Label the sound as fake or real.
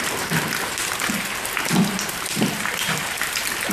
real